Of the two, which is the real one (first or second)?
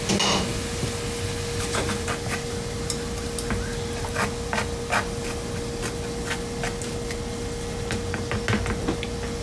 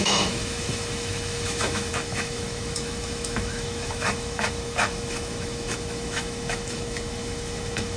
first